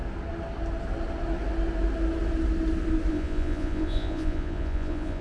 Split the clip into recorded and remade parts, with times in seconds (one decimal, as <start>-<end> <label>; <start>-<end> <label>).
0.0-3.1 recorded; 3.1-5.2 remade

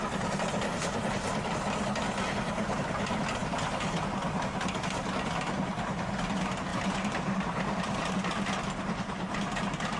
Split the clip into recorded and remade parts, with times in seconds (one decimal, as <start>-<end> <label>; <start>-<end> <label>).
0.0-6.7 recorded; 6.7-8.1 remade; 8.1-10.0 recorded

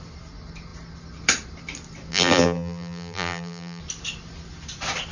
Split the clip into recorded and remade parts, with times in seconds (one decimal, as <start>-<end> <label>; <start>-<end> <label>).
0.0-2.1 recorded; 2.1-3.8 remade; 3.8-5.1 recorded

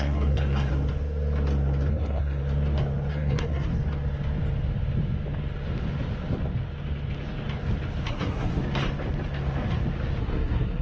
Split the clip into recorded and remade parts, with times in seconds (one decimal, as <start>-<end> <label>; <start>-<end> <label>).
0.0-0.7 remade; 0.7-1.9 recorded; 1.9-2.4 remade; 2.4-3.1 recorded; 3.1-3.7 remade; 3.7-8.1 recorded; 8.1-8.6 remade; 8.6-10.2 recorded; 10.2-10.8 remade

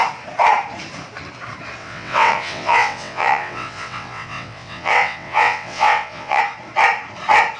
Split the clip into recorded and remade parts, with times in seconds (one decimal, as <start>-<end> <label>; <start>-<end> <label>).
0.0-1.8 recorded; 1.8-6.4 remade; 6.4-7.6 recorded

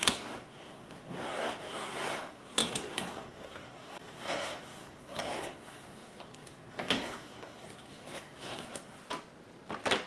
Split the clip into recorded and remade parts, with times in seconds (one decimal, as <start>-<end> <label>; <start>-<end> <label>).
0.0-9.0 remade; 9.0-10.1 recorded

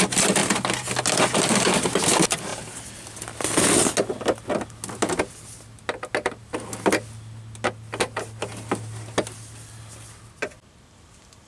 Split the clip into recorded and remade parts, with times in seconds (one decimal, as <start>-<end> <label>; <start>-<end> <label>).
0.0-11.5 recorded

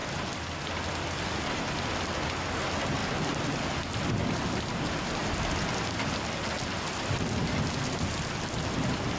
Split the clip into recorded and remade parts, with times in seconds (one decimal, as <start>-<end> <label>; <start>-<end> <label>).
0.0-0.6 remade; 0.6-9.2 recorded